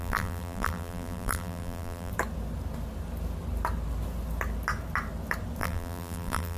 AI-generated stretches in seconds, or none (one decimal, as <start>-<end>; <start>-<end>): 0.0-2.1; 5.6-6.6